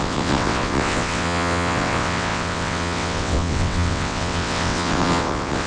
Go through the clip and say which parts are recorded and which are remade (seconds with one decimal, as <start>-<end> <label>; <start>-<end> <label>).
0.0-5.7 remade